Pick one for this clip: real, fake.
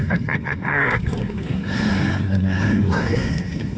fake